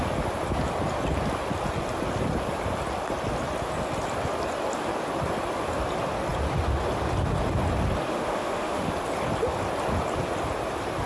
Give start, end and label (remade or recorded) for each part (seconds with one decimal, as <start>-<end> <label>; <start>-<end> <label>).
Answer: 0.0-8.1 recorded; 8.1-8.9 remade; 8.9-11.1 recorded